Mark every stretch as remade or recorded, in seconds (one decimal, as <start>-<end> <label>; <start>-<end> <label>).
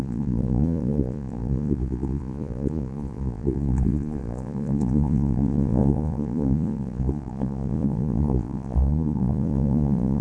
0.0-10.2 remade